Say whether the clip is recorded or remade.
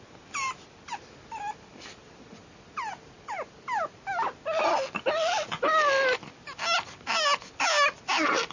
recorded